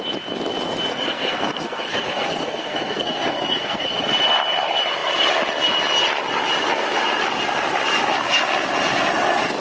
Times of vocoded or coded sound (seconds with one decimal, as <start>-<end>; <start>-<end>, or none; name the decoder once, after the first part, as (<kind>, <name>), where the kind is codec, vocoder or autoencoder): 0.9-4.0 (codec, SNAC)